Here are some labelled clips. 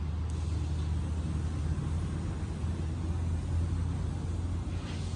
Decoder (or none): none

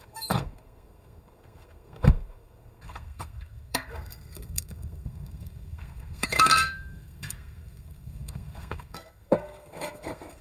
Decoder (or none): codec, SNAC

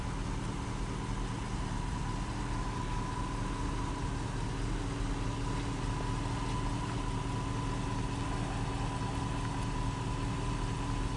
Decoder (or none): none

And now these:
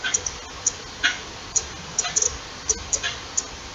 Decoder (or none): none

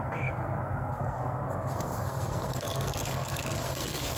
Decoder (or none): codec, SNAC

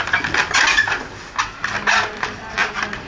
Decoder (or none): none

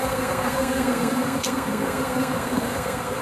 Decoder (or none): codec, SNAC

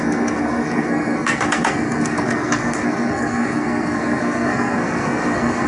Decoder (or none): codec, SNAC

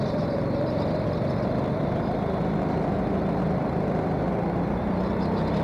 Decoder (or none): none